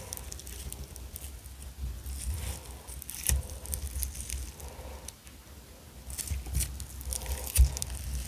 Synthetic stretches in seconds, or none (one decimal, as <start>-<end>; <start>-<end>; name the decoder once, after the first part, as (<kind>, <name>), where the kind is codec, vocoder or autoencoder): none

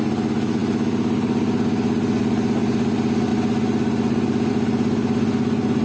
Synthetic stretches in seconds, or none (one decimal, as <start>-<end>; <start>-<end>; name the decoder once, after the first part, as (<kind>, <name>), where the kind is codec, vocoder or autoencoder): none